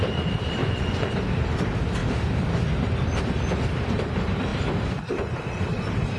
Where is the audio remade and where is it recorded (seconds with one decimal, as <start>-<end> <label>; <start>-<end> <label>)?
0.0-0.6 recorded; 0.6-1.1 remade; 1.1-6.2 recorded